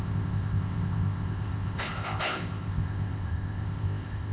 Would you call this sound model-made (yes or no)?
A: yes